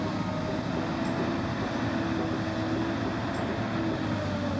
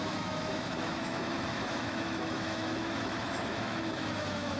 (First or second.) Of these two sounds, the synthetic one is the second